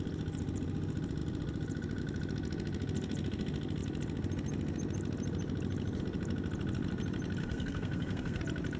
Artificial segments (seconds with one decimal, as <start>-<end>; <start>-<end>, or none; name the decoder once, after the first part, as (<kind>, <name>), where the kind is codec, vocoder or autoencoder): 7.4-8.4 (codec, SNAC)